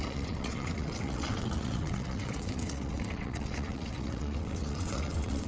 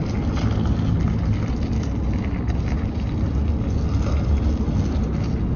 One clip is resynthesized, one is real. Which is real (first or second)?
second